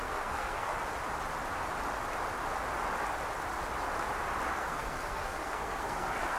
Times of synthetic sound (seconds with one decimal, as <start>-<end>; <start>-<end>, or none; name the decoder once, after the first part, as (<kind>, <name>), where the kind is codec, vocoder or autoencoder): 0.0-0.7 (codec, SNAC); 4.5-6.4